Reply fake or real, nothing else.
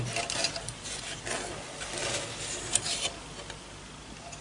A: real